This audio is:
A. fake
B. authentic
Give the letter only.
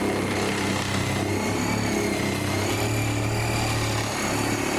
B